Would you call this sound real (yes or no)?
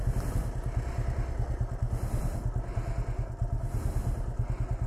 yes